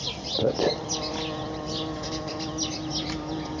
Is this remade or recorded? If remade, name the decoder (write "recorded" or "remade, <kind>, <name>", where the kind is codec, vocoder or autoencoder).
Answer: recorded